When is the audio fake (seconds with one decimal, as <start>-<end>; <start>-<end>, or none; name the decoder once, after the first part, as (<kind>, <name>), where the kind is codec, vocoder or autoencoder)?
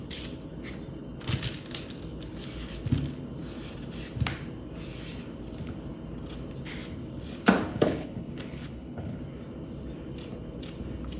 7.7-9.2 (codec, HILCodec)